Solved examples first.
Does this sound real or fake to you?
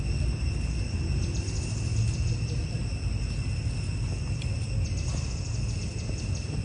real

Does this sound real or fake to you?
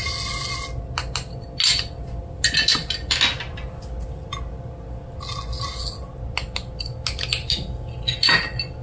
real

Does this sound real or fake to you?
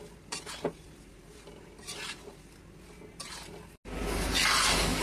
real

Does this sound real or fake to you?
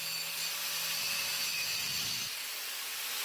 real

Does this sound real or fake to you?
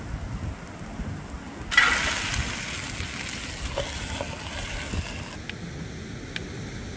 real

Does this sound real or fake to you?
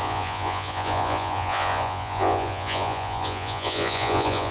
fake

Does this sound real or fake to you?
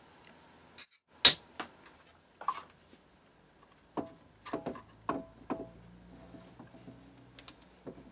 real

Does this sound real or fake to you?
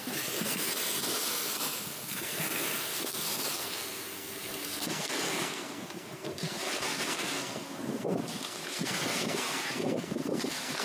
fake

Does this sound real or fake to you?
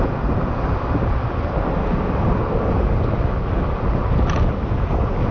real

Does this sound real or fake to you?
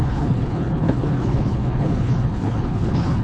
fake